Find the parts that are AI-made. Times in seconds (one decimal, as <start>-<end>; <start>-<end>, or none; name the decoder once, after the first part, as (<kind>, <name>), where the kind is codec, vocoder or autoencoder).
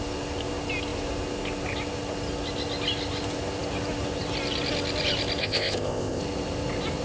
5.4-6.2 (codec, ZipCodec)